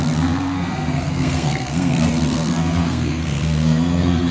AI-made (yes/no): yes